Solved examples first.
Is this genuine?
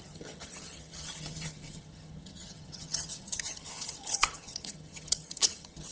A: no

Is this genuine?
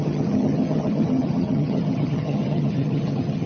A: no